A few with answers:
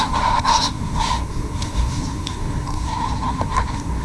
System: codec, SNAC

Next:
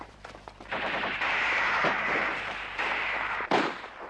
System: vocoder, BigVGAN v2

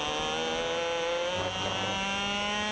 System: none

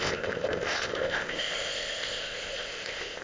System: codec, ZipCodec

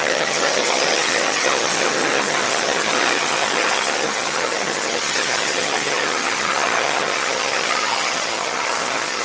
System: vocoder, HiFi-GAN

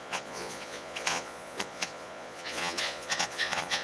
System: vocoder, Vocos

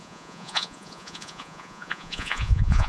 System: vocoder, Vocos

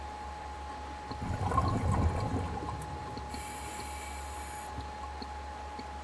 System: none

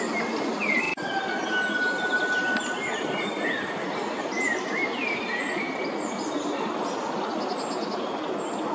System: none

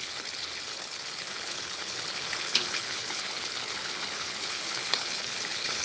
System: codec, HILCodec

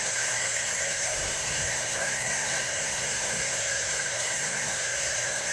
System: codec, SNAC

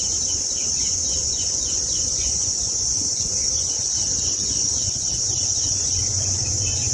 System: vocoder, Vocos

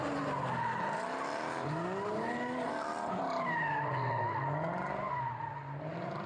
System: none